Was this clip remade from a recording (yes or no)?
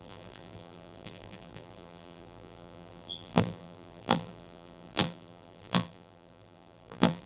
yes